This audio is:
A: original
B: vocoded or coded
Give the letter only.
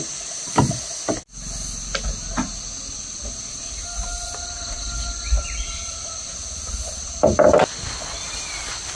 A